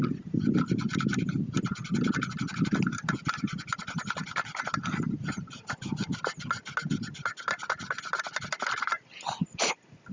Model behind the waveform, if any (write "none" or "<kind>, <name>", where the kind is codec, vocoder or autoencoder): none